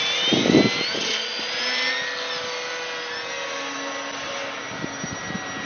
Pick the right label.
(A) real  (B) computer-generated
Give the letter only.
A